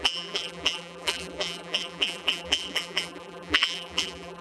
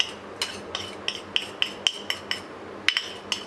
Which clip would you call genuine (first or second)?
second